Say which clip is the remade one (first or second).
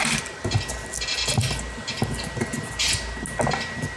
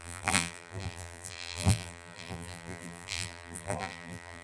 second